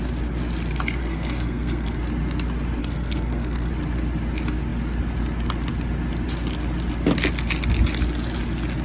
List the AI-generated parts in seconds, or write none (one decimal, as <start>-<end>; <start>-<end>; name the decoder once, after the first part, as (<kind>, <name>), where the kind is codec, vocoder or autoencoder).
1.0-2.0 (codec, SNAC); 2.8-3.7